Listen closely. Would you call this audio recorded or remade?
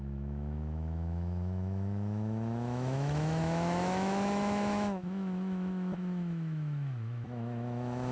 remade